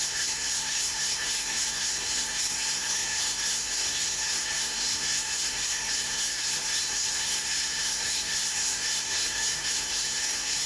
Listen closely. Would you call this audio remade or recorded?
remade